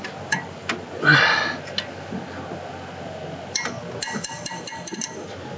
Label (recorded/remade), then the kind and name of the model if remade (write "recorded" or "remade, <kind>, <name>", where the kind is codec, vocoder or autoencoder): recorded